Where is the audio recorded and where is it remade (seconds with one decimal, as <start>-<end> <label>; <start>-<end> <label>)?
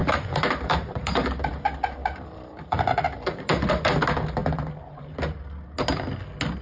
0.0-4.0 remade; 4.0-4.4 recorded; 4.4-5.4 remade; 5.4-6.6 recorded